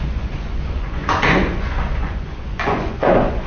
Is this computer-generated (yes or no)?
yes